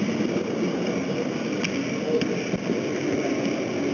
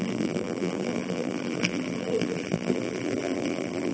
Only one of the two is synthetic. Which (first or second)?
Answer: second